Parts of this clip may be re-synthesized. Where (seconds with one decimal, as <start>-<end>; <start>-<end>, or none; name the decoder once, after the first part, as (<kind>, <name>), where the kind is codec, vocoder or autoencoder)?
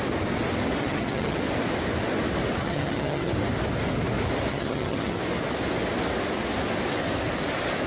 0.8-1.4 (vocoder, HiFi-GAN); 2.6-3.3; 4.5-5.2